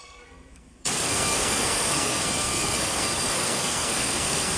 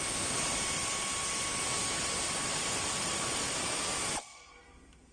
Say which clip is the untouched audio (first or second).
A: second